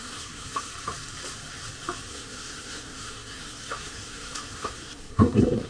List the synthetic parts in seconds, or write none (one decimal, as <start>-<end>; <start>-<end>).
0.0-0.7; 2.1-5.7